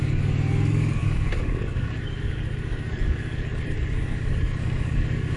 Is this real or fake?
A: fake